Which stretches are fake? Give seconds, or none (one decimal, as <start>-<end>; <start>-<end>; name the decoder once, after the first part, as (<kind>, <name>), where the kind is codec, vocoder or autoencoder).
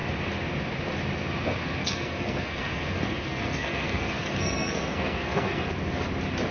1.8-5.7 (codec, SNAC)